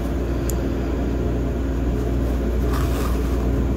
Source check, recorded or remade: recorded